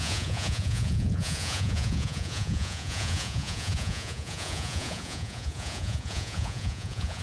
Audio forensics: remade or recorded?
remade